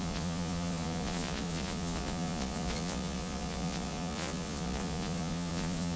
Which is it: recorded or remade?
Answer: remade